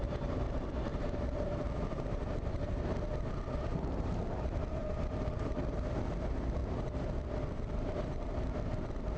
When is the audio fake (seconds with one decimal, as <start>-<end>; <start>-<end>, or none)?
0.0-6.6; 7.5-9.2